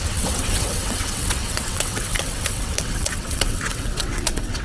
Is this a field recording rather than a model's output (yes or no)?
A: no